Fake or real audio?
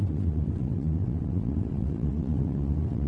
fake